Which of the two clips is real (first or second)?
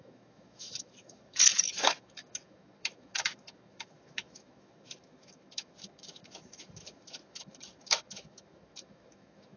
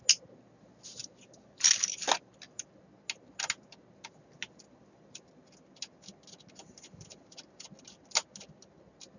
second